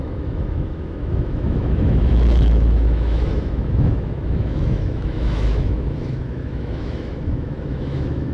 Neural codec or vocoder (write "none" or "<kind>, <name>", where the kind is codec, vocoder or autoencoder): autoencoder, DAC-VAE